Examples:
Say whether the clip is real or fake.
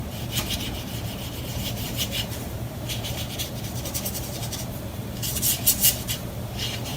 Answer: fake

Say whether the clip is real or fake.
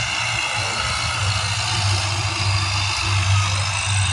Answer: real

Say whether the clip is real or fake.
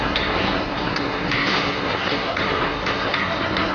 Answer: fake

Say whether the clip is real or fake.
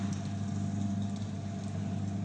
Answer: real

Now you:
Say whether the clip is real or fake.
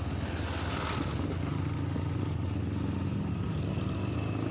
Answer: real